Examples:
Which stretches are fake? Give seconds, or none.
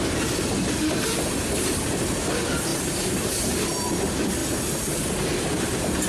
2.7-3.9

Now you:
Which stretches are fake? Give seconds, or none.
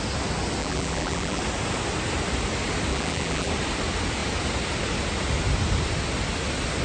0.6-1.4; 2.9-3.5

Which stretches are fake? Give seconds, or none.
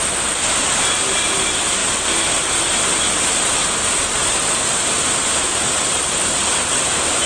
none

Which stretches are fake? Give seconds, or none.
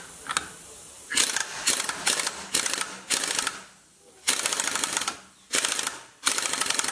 none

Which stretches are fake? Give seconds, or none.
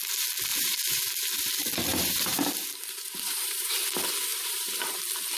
0.5-1.0; 1.9-3.7; 4.3-4.8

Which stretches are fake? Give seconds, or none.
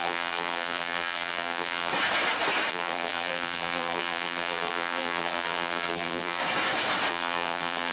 0.0-1.9; 2.7-6.4; 7.1-7.9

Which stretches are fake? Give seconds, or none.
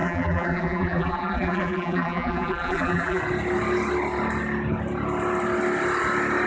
0.0-3.2